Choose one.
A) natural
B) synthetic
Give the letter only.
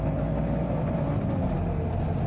A